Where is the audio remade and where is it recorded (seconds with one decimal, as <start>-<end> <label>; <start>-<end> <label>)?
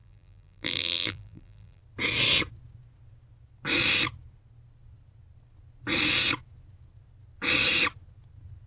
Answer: 0.0-1.8 remade; 1.8-8.7 recorded